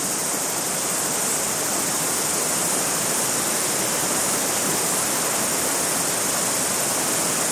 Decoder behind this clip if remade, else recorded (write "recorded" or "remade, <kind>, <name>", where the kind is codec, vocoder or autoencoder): recorded